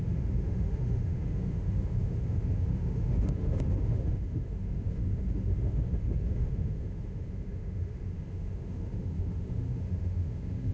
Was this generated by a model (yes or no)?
yes